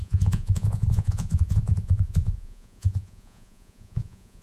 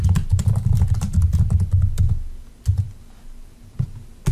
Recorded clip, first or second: second